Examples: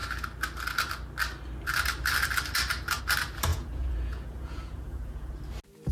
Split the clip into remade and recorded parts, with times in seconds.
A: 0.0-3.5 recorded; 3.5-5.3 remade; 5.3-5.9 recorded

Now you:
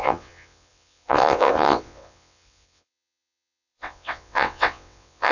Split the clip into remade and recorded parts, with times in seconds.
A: 0.0-5.3 remade

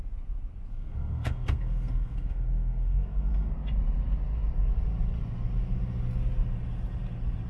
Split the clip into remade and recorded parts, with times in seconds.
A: 0.0-0.7 recorded; 0.7-3.5 remade; 3.5-7.5 recorded

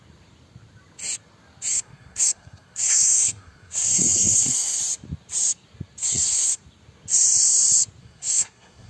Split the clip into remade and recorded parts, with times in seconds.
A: 0.0-1.7 recorded; 1.7-4.8 remade; 4.8-6.0 recorded; 6.0-6.6 remade; 6.6-8.0 recorded; 8.0-8.9 remade